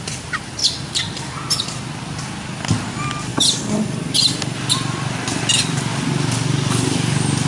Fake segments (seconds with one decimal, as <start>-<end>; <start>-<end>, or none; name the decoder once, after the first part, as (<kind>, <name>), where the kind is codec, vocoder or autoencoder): none